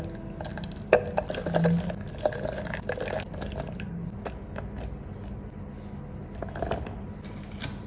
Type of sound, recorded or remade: recorded